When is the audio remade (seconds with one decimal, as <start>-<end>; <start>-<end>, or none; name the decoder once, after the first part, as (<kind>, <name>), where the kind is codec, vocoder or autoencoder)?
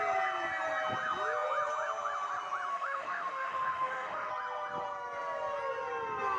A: 2.7-4.3 (autoencoder, DAC-VAE)